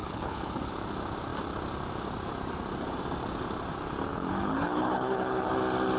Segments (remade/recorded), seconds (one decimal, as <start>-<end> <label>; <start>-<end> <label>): 0.0-0.7 remade; 0.7-4.1 recorded; 4.1-5.5 remade; 5.5-6.0 recorded